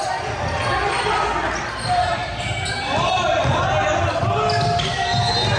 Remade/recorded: recorded